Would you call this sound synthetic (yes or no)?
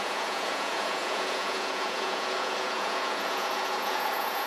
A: yes